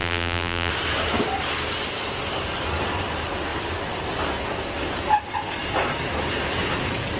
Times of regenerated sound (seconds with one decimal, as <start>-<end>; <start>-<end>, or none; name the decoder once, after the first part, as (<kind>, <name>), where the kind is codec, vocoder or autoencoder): 0.0-0.7 (vocoder, BigVGAN v2)